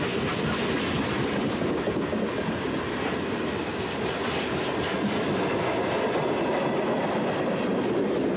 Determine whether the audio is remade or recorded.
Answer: recorded